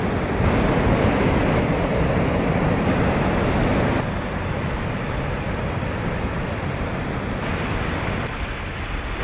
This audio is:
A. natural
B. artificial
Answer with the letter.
A